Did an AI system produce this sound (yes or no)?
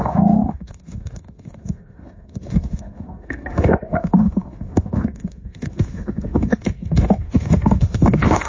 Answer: yes